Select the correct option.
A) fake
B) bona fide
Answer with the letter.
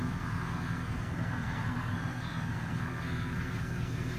A